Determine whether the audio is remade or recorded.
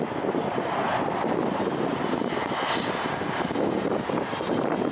recorded